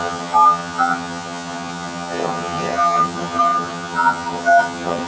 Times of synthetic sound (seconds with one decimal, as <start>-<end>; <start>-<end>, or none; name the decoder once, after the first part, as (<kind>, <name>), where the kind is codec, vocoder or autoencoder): 0.0-5.1 (vocoder, HiFi-GAN)